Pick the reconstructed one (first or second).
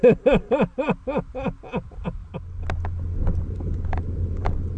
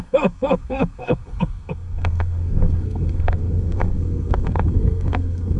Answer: second